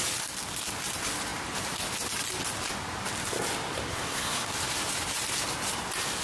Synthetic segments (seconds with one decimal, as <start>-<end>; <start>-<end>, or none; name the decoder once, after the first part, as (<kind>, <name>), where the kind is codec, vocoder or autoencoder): 3.9-4.5 (codec, SNAC)